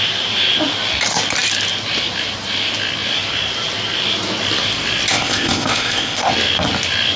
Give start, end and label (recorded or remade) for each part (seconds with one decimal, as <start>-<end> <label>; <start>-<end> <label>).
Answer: 0.0-5.1 recorded; 5.1-6.3 remade; 6.3-7.2 recorded